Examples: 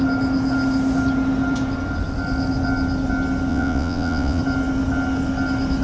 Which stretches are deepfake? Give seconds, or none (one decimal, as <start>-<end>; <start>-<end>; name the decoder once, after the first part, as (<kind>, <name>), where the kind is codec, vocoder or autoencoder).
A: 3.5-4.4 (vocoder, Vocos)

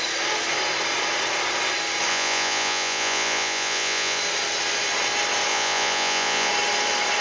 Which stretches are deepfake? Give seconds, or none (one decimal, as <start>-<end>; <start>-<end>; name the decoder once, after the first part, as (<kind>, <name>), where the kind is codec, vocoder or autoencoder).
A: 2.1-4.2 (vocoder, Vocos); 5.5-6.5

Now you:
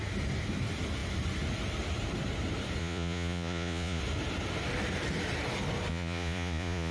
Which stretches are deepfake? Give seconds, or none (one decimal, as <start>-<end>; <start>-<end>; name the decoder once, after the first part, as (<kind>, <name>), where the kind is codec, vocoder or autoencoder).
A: 2.8-4.0 (vocoder, Vocos); 5.9-6.9

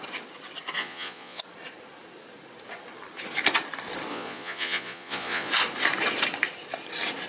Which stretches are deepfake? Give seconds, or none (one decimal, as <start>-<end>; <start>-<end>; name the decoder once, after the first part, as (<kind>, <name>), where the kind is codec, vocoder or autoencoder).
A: 0.8-1.4 (vocoder, Vocos); 4.1-5.5